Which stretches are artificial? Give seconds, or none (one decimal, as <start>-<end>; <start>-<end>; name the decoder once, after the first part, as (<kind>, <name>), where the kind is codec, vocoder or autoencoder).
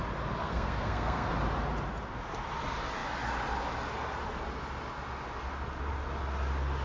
0.4-1.3 (codec, SNAC)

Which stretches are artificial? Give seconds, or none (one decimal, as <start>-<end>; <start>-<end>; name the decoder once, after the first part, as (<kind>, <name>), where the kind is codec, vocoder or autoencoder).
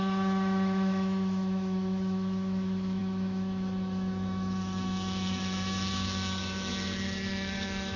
0.0-8.0 (autoencoder, DAC-VAE)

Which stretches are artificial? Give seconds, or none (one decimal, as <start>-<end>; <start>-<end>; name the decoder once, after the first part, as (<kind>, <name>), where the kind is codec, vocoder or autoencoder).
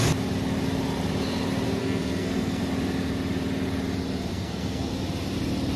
1.8-2.6 (codec, SNAC); 4.3-4.9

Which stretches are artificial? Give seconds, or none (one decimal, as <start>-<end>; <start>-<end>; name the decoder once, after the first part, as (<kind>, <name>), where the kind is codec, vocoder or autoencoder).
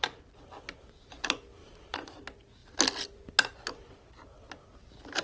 1.6-2.2 (vocoder, Vocos)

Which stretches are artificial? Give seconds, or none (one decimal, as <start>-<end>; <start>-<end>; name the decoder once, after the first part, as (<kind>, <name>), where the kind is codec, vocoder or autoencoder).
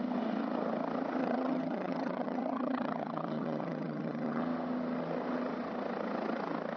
1.2-4.4 (vocoder, HiFi-GAN)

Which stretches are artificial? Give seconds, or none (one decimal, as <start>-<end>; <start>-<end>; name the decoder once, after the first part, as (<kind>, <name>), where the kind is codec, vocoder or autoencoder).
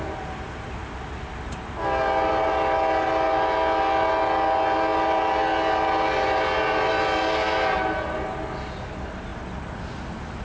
none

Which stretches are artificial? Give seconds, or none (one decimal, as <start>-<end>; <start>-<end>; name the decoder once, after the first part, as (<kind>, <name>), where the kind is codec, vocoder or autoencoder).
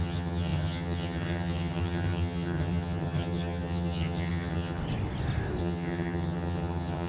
0.0-4.8 (vocoder, HiFi-GAN); 5.6-7.1